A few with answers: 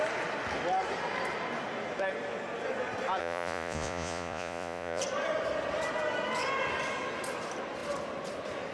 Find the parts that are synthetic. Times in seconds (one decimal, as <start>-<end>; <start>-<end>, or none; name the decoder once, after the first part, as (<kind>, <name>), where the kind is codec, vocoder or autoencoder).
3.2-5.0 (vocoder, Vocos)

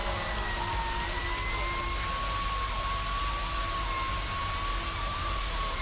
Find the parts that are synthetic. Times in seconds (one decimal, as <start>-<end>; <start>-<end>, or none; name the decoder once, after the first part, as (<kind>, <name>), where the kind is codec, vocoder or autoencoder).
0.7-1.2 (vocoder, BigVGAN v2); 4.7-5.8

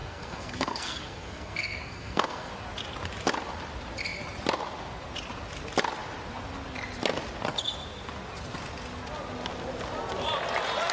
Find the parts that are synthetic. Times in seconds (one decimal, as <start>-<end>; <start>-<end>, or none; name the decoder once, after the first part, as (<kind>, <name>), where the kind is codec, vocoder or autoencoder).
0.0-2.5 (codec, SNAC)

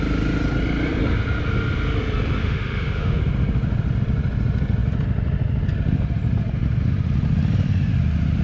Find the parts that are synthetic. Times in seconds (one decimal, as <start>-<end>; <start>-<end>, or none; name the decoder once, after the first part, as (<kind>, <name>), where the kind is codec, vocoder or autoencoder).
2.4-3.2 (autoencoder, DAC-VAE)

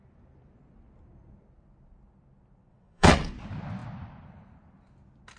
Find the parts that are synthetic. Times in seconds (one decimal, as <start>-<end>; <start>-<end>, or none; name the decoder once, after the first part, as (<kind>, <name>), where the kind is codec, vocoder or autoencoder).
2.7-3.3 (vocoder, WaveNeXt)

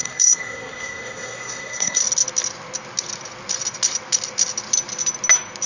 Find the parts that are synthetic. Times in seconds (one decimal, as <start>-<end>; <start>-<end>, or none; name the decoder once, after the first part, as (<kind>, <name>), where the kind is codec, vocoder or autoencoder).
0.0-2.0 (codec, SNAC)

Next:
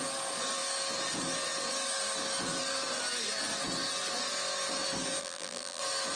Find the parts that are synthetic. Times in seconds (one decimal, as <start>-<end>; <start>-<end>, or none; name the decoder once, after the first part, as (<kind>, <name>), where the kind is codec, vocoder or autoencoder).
5.2-5.8 (vocoder, BigVGAN v2)

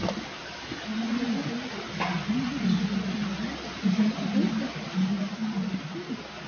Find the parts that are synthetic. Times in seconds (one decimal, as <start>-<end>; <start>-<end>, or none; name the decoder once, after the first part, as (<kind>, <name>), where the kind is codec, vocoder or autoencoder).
none